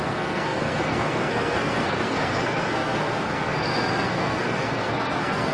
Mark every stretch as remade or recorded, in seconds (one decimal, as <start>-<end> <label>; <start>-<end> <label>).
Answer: 0.0-5.5 remade